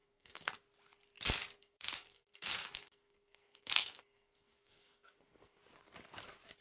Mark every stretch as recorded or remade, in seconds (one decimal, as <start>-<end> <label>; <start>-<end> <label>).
0.0-0.5 remade; 0.5-1.6 recorded; 1.6-5.6 remade; 5.6-6.6 recorded